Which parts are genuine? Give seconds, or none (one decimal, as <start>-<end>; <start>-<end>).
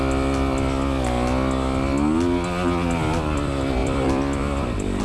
0.0-3.8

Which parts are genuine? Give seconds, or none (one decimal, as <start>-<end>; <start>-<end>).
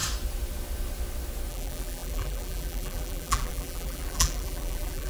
0.0-1.5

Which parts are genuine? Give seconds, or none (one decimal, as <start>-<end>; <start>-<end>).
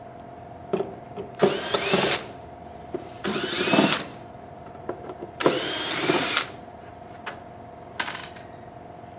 0.0-0.7; 1.4-4.1; 6.7-9.2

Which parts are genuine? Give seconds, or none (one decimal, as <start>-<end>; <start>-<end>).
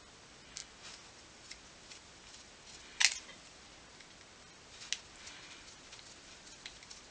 0.0-7.1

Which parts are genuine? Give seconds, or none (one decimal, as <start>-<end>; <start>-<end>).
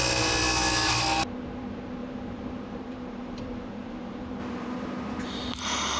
0.0-2.0; 5.6-6.0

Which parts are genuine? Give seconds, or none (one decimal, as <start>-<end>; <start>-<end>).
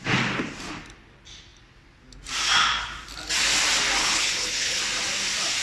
0.0-4.0; 4.8-5.6